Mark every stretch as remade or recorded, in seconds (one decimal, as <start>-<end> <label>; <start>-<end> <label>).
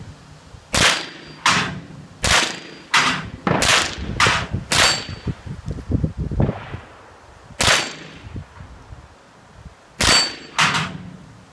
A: 0.0-11.5 recorded